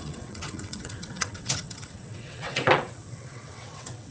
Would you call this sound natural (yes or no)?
no